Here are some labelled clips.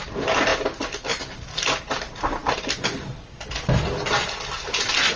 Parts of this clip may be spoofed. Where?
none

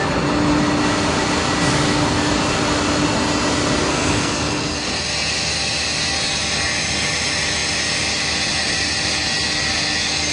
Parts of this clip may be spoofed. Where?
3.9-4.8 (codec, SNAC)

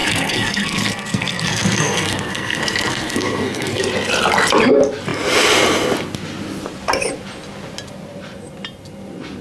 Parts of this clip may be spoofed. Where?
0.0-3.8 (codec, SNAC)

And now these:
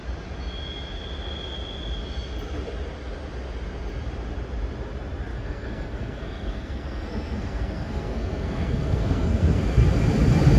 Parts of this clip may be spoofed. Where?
5.3-9.6 (codec, SNAC)